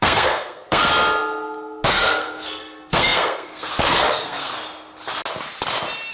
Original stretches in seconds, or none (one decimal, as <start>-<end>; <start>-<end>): 0.9-1.9; 4.5-6.1